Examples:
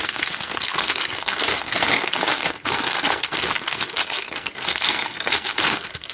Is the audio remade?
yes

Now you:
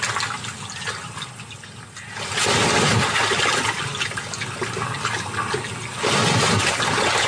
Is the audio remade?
no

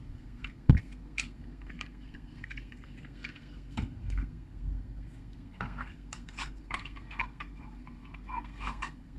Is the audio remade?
yes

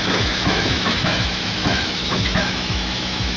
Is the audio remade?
yes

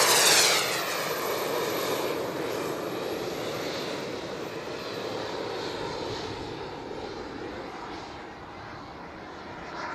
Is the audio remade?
no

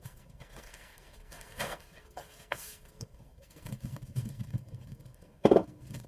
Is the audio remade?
yes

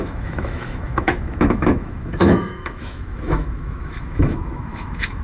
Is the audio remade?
yes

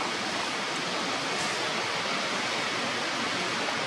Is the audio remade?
no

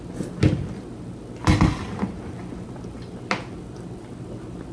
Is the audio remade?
no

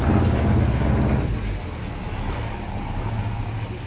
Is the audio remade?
no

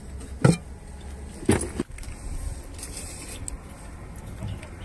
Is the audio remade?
no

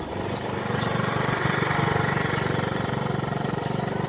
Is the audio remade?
no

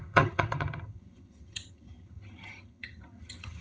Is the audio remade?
yes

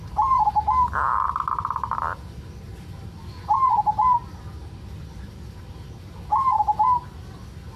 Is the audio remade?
no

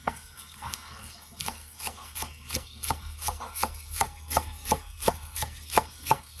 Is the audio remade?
yes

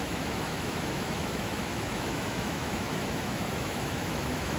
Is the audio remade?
yes